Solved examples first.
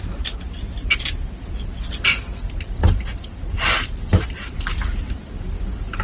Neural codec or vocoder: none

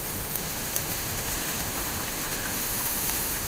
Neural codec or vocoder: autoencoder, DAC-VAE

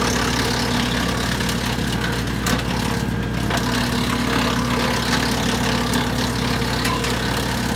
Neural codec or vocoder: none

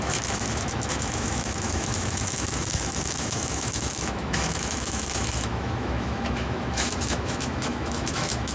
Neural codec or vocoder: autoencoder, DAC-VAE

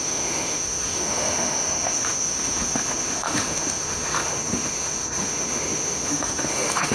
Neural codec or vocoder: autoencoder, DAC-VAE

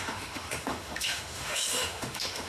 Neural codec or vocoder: autoencoder, DAC-VAE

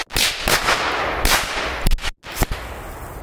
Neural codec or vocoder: none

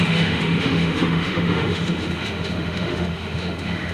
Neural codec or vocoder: autoencoder, DAC-VAE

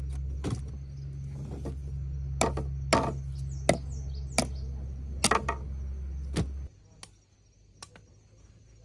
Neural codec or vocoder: none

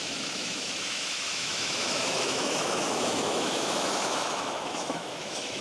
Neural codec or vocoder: autoencoder, DAC-VAE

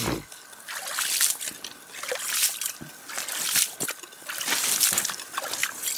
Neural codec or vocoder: none